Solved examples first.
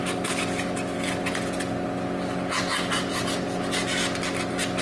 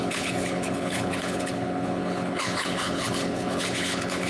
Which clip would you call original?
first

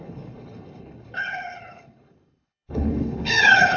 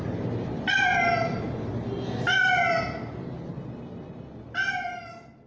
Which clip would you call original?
second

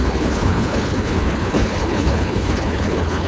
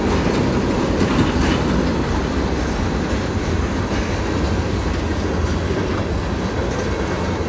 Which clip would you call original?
second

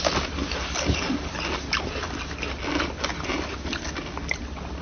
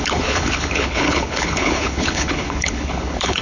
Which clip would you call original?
first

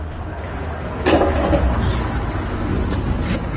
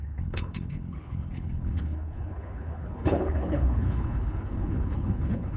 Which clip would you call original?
first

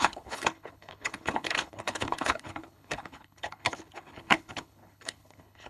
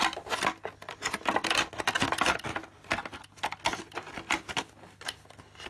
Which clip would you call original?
second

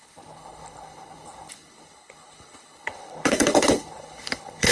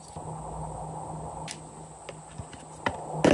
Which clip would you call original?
second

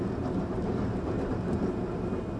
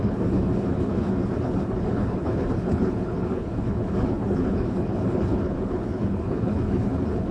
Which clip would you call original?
first